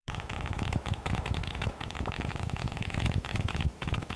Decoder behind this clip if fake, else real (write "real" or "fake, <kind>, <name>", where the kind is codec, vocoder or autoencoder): fake, autoencoder, DAC-VAE